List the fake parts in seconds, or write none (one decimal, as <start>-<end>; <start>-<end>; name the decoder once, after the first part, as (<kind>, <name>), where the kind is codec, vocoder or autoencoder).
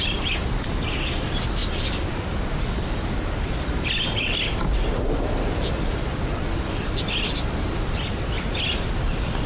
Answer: none